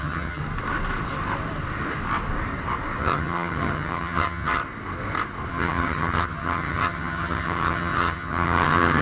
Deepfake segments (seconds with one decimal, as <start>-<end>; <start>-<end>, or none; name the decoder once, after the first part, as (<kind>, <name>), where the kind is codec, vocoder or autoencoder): 0.0-0.4 (vocoder, HiFi-GAN); 3.0-4.6; 5.5-9.0